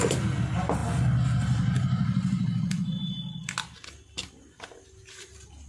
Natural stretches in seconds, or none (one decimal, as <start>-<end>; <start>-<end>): 0.0-5.7